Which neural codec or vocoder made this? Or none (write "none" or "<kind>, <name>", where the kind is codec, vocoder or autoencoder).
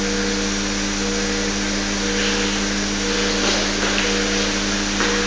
none